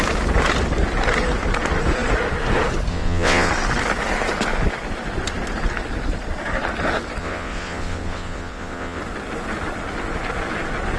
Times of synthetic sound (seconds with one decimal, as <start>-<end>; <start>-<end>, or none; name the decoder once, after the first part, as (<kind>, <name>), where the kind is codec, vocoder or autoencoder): 2.9-3.5 (vocoder, WaveNeXt); 7.2-9.0

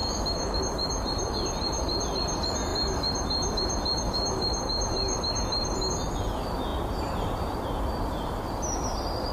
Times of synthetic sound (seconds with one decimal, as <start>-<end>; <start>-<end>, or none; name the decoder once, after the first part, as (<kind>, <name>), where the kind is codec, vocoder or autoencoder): 0.0-0.6 (autoencoder, DAC-VAE)

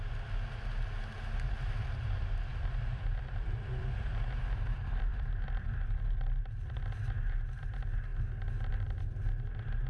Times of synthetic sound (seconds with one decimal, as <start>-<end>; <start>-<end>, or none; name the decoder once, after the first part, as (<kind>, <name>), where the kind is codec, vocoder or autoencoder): 2.5-3.9 (vocoder, BigVGAN v2); 5.1-6.0

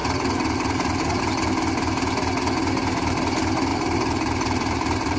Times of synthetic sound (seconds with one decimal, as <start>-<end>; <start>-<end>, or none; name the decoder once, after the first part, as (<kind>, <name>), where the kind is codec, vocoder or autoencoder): 0.0-1.2 (vocoder, BigVGAN v2); 3.7-5.2

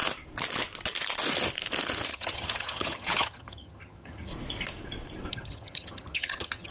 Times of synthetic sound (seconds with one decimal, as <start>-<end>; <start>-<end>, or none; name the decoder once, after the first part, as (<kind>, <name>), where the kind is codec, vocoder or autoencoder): 2.1-4.3 (vocoder, HiFi-GAN); 5.3-6.7

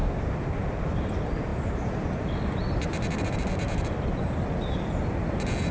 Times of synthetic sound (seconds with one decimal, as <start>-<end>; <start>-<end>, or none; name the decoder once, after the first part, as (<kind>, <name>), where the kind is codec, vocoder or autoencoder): none